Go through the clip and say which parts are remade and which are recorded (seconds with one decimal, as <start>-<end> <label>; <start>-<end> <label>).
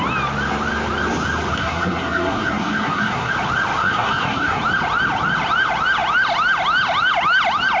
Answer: 0.0-1.5 recorded; 1.5-3.3 remade; 3.3-3.8 recorded; 3.8-4.6 remade; 4.6-7.8 recorded